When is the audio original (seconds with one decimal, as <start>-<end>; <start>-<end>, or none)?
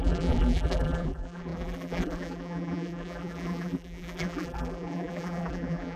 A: none